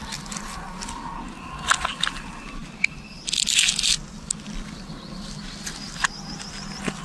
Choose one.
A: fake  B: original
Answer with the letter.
B